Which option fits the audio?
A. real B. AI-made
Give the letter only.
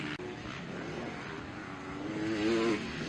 A